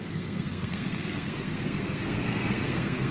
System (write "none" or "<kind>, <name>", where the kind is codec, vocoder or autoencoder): codec, SNAC